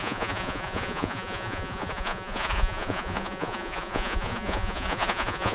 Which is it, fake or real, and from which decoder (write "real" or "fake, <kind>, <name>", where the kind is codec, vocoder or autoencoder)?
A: fake, vocoder, Vocos